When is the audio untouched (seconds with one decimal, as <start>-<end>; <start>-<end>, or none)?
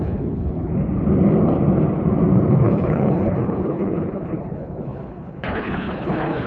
0.7-2.5